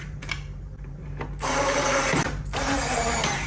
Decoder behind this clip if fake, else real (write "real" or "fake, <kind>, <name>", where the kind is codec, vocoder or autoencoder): fake, vocoder, BigVGAN v2